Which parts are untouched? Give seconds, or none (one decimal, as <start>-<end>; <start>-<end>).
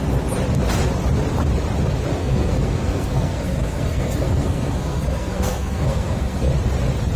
0.0-2.2; 6.5-7.2